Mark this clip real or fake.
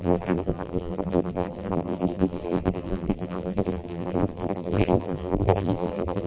fake